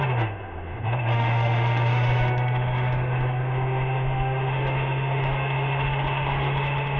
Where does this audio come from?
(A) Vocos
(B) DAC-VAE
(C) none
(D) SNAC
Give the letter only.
B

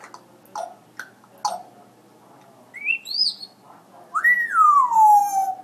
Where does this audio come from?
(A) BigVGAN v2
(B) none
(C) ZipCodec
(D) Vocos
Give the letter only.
B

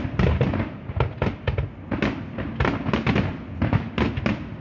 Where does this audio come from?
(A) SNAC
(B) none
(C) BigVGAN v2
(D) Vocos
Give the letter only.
B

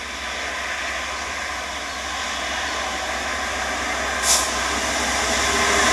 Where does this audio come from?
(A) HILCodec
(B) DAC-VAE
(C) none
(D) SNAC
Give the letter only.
C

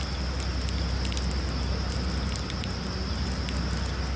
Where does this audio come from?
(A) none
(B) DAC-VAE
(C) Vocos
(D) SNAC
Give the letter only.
A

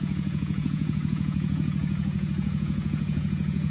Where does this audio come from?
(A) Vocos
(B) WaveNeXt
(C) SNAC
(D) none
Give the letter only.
A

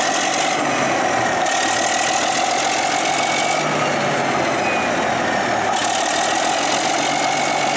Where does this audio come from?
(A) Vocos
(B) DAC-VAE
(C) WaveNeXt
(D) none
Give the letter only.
D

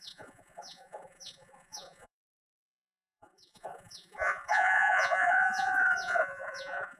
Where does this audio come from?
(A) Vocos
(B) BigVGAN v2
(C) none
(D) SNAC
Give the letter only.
A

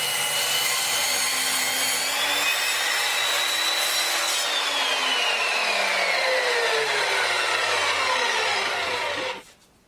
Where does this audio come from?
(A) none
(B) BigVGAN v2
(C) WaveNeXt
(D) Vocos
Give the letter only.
A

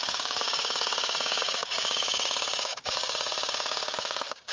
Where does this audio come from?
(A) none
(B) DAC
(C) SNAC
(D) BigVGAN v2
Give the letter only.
B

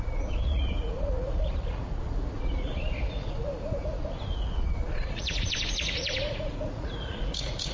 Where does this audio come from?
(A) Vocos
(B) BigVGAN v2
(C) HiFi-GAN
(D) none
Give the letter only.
A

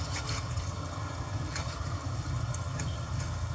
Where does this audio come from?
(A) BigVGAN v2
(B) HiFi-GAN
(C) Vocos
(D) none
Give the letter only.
B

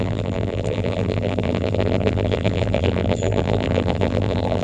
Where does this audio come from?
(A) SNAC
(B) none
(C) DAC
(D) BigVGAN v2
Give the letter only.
D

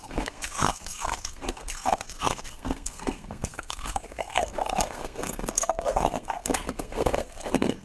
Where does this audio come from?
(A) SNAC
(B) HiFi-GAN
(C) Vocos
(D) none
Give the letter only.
A